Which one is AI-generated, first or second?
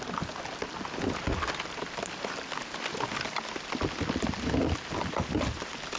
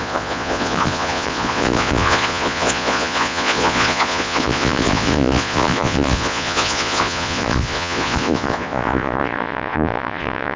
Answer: second